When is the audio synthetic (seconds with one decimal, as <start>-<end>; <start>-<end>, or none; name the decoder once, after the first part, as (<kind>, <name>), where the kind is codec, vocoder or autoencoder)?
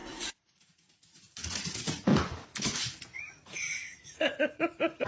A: 0.0-2.1 (vocoder, Vocos); 3.3-5.1